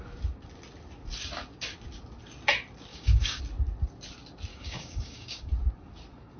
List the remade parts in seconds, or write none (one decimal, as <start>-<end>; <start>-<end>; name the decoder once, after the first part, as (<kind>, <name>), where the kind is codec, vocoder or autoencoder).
2.9-3.4 (codec, DAC); 4.5-5.5